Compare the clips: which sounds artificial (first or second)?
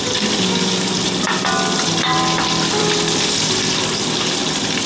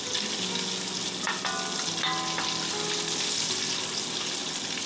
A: first